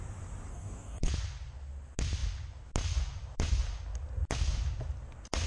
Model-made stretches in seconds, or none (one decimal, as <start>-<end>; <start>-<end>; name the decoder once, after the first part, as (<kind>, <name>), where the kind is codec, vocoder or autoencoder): 0.5-1.1 (codec, DAC)